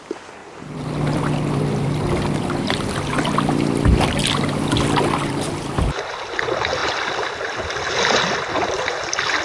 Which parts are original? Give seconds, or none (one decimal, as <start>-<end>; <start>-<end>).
0.0-0.4; 5.6-9.4